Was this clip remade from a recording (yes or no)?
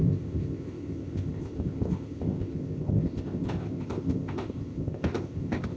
yes